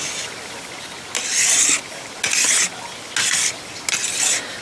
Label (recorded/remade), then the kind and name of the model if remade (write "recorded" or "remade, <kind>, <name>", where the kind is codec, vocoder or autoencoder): recorded